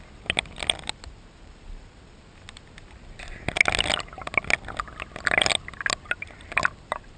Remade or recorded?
recorded